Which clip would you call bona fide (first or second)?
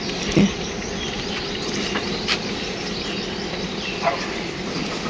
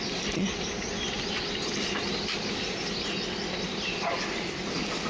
second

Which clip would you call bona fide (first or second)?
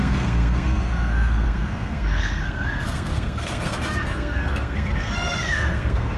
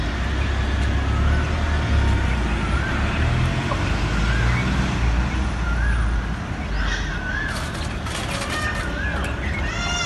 second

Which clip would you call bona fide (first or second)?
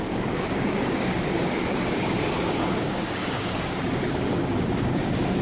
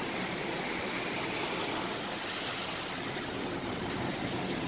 second